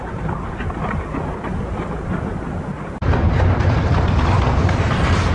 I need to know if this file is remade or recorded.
recorded